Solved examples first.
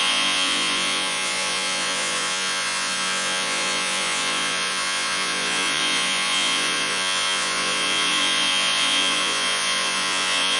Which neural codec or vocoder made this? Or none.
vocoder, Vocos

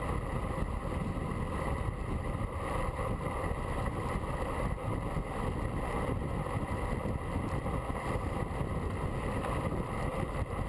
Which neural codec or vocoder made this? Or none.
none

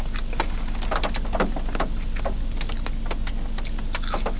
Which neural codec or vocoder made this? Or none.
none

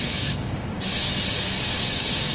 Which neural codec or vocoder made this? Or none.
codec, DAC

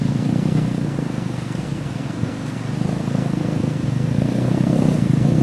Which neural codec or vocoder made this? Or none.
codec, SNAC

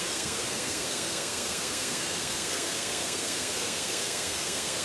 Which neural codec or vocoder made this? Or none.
codec, SNAC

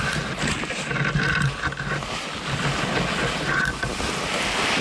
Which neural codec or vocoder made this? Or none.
none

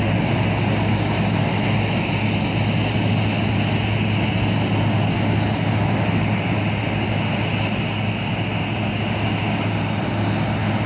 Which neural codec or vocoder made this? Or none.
none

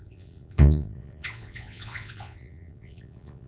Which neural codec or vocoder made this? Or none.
vocoder, Vocos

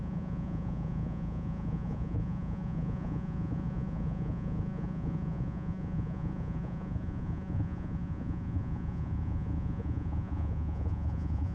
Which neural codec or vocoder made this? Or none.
vocoder, Vocos